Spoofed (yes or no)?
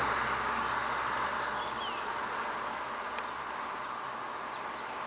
no